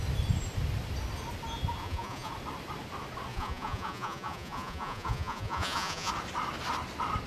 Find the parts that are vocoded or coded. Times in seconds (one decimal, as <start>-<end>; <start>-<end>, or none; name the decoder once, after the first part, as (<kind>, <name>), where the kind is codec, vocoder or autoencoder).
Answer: 1.8-2.3 (vocoder, Vocos); 3.3-6.1